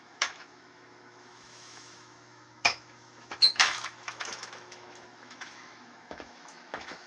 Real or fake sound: fake